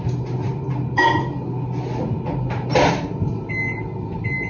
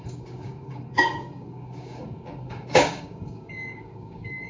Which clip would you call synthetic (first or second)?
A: second